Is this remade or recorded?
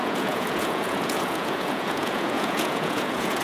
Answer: remade